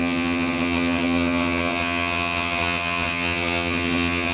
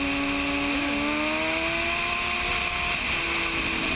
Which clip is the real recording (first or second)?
second